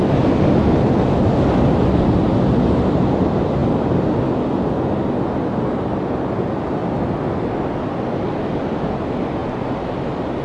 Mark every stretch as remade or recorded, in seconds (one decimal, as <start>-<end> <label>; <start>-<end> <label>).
0.0-10.4 recorded